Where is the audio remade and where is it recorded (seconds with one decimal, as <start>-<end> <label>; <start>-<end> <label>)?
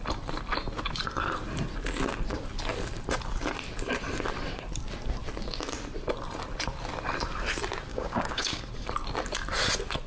0.0-7.9 recorded; 7.9-8.6 remade; 8.6-10.1 recorded